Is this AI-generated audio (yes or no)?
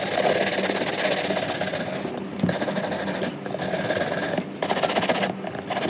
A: no